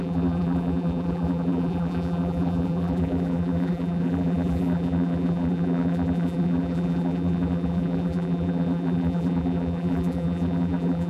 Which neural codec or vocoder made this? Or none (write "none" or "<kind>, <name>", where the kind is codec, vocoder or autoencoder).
vocoder, BigVGAN v2